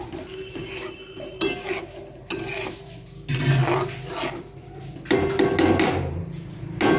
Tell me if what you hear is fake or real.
real